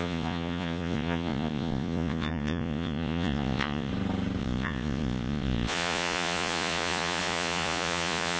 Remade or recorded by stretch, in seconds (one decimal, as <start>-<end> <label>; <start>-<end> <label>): 0.0-3.9 remade; 3.9-4.4 recorded; 4.4-8.4 remade